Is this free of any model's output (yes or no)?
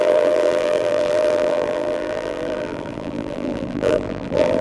no